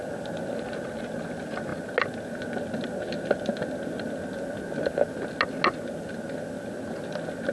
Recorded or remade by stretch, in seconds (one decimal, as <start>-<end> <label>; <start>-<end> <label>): 0.0-7.5 recorded